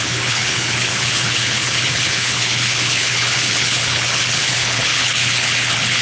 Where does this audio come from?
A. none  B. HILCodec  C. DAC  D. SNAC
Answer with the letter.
B